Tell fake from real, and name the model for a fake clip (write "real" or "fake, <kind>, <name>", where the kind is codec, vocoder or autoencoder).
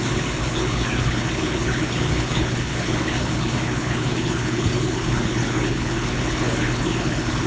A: fake, codec, HILCodec